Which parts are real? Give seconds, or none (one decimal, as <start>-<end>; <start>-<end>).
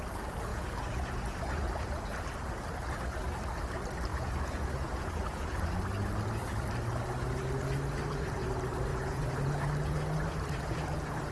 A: 0.0-0.5; 1.7-4.1; 5.6-8.9; 9.7-11.3